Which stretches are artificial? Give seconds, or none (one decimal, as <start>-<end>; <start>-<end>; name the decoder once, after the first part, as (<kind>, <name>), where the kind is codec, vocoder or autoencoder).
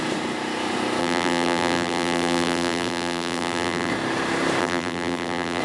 1.0-3.9 (vocoder, BigVGAN v2); 4.6-5.6